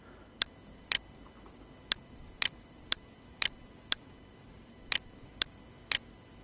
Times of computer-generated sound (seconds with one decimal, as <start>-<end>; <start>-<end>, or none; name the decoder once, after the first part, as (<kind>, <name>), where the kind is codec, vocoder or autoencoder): 2.0-5.3 (vocoder, BigVGAN v2)